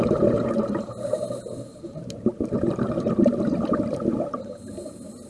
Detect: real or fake fake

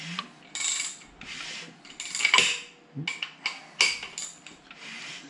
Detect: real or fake real